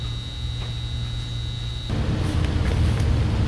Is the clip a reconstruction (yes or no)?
no